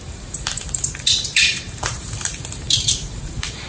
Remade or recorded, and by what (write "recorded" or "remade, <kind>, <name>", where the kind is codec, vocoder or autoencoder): remade, vocoder, BigVGAN v2